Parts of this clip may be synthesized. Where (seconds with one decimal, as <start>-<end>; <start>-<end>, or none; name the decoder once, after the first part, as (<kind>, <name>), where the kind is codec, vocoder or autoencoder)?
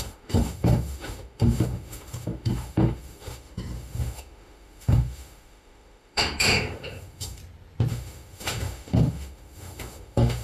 0.0-7.4 (autoencoder, DAC-VAE); 7.9-10.4